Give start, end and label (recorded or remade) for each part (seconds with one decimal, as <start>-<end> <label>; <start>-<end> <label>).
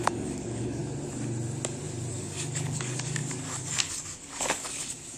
0.0-0.8 remade; 0.8-2.1 recorded; 2.1-5.2 remade